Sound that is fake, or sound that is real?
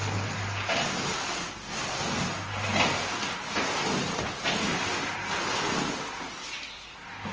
real